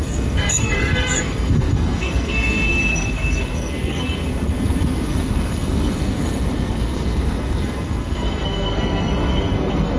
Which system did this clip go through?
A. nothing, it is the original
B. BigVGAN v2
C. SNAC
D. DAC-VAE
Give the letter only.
C